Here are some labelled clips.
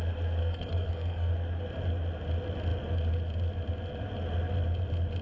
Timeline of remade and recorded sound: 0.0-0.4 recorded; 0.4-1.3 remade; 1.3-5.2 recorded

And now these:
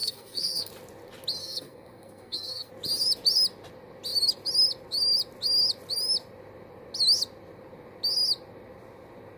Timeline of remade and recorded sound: 0.0-0.7 remade; 0.7-1.4 recorded; 1.4-2.7 remade; 2.7-9.4 recorded

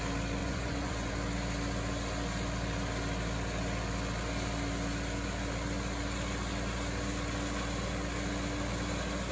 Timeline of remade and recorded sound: 0.0-0.4 recorded; 0.4-1.1 remade; 1.1-9.3 recorded

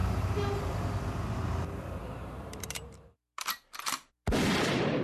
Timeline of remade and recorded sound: 0.0-0.6 remade; 0.6-2.0 recorded; 2.0-3.1 remade; 3.1-5.0 recorded

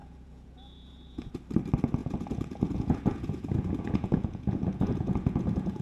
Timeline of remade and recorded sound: 0.0-1.3 remade; 1.3-2.0 recorded; 2.0-5.8 remade

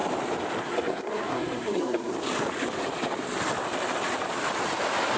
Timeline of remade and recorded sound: 0.0-0.6 recorded; 0.6-2.1 remade; 2.1-5.2 recorded

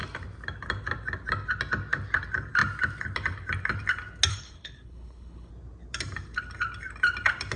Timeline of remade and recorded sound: 0.0-4.3 recorded; 4.3-5.5 remade; 5.5-7.6 recorded